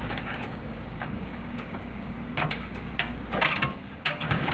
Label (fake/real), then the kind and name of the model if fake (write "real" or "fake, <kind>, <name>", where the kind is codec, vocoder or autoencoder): fake, codec, DAC